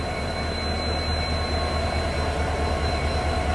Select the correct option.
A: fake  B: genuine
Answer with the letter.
B